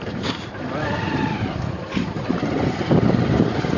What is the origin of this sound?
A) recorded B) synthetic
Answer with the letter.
B